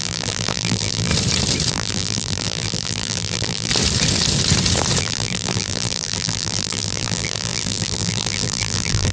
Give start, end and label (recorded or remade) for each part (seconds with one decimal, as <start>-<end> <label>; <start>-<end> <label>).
0.0-1.1 remade; 1.1-1.7 recorded; 1.7-3.7 remade; 3.7-5.0 recorded; 5.0-9.1 remade